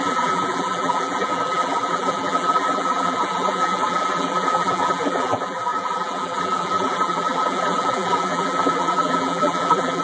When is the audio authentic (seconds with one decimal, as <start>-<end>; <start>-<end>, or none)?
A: none